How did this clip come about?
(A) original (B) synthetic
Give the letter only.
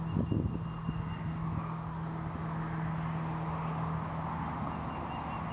A